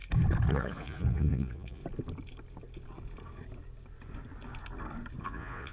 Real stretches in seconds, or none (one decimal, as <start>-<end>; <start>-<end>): 0.0-0.5; 1.8-5.2

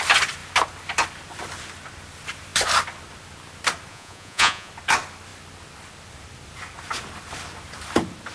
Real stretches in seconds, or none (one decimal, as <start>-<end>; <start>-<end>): 0.0-3.9; 4.7-8.3

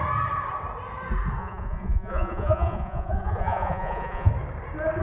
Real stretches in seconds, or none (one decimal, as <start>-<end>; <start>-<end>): 0.0-1.4; 4.3-5.0